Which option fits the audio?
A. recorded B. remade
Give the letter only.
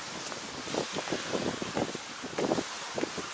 A